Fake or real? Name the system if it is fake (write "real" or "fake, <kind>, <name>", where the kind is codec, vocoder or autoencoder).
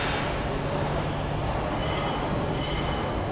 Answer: real